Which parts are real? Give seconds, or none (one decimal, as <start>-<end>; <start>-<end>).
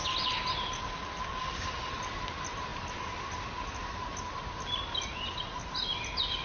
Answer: 0.0-1.4; 1.9-6.4